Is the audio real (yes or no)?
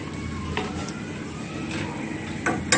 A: yes